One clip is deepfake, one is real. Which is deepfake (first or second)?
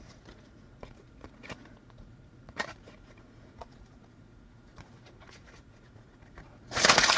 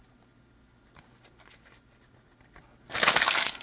first